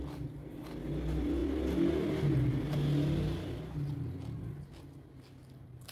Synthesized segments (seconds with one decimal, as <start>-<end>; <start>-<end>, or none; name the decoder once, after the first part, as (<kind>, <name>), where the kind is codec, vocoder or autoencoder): none